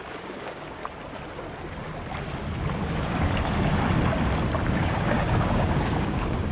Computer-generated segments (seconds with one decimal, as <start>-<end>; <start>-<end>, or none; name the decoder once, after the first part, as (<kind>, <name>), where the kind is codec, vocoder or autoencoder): 0.0-0.8 (codec, DAC); 4.7-6.5